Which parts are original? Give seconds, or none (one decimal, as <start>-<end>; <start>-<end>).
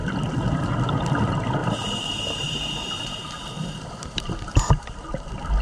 0.0-1.6; 5.0-5.6